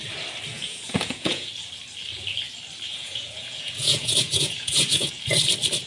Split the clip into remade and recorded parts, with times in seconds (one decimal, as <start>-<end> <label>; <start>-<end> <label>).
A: 0.0-0.5 recorded; 0.5-1.5 remade; 1.5-2.9 recorded; 2.9-5.1 remade; 5.1-5.9 recorded